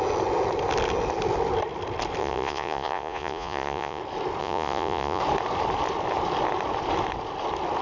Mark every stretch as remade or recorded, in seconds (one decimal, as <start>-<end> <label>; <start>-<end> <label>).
0.0-2.2 recorded; 2.2-4.0 remade; 4.0-4.4 recorded; 4.4-5.2 remade; 5.2-7.8 recorded